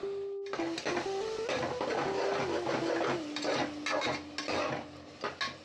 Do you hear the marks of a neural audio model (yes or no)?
no